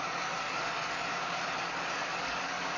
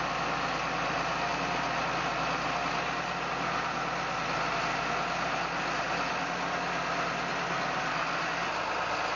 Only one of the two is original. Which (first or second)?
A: second